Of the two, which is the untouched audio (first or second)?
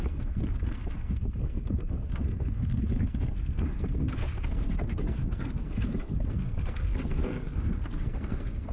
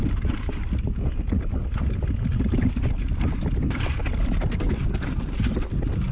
second